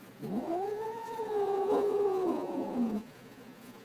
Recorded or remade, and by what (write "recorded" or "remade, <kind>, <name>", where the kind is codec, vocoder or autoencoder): remade, vocoder, Vocos